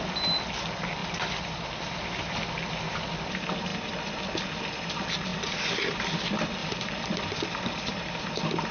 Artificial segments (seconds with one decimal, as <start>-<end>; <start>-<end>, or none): 1.0-2.3; 5.3-6.0; 6.6-8.2